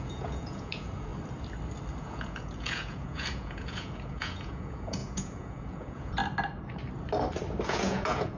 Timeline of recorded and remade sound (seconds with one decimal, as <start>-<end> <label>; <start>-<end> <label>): 0.0-1.1 remade; 1.1-2.0 recorded; 2.0-6.2 remade; 6.2-7.7 recorded; 7.7-8.4 remade